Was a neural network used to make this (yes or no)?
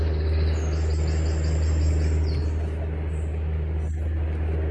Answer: no